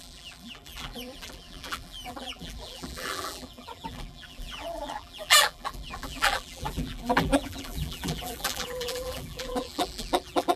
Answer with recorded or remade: remade